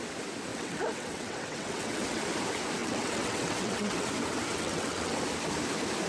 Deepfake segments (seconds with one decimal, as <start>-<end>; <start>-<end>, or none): 0.5-2.2; 2.8-4.1; 4.5-5.2